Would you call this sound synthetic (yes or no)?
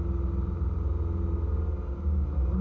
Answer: no